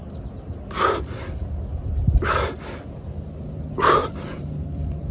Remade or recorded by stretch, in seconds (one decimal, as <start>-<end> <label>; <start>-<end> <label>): 0.0-4.0 recorded; 4.0-5.1 remade